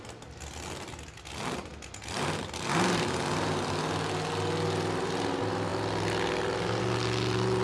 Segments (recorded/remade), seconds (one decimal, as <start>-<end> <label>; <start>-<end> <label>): 0.0-7.6 recorded